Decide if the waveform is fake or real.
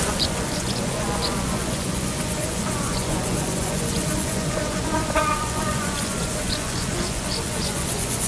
fake